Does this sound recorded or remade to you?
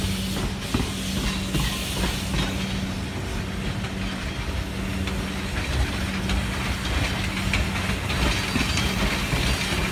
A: recorded